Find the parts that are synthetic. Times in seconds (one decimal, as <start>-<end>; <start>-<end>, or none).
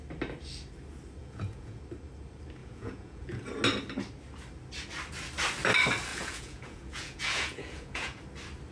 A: 1.2-1.8; 2.6-3.5; 6.1-8.2